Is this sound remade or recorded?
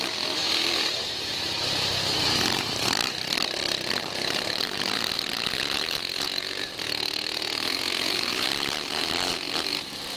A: remade